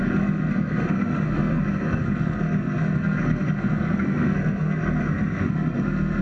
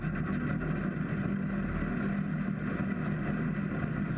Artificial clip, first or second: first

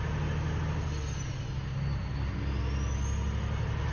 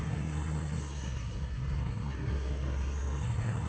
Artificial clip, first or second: second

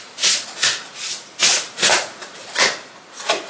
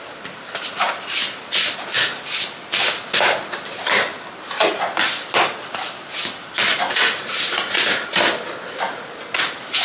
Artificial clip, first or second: first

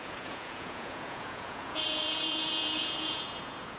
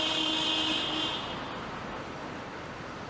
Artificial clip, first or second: first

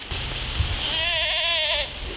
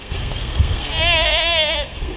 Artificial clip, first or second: second